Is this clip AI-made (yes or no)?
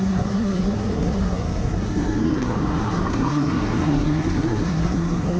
yes